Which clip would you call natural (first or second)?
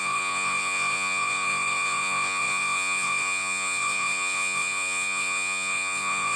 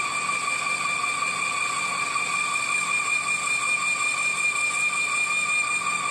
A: second